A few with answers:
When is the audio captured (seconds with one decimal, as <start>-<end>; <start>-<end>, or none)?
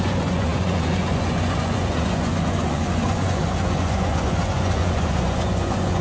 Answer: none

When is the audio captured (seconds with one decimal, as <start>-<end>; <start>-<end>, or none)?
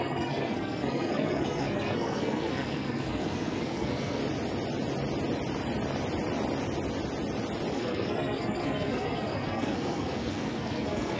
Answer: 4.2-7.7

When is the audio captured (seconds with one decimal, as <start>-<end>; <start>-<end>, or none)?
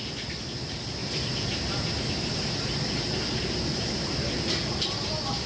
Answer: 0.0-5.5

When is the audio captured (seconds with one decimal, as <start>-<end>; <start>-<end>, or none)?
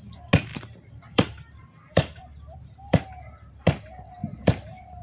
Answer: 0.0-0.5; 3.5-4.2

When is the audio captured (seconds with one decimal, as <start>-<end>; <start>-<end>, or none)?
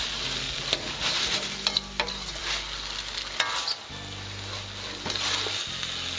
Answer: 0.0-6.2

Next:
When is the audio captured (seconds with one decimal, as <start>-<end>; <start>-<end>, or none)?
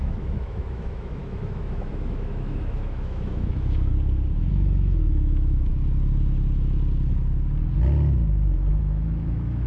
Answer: 3.9-4.5; 5.7-8.8